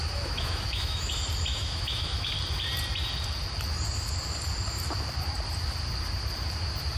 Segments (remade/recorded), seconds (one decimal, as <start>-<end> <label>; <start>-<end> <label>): 0.0-1.1 remade; 1.1-1.5 recorded; 1.5-2.3 remade; 2.3-7.0 recorded